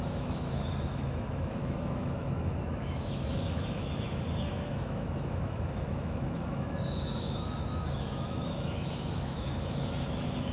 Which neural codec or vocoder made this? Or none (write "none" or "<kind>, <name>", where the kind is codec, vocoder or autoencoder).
autoencoder, DAC-VAE